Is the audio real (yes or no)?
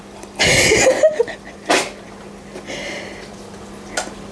yes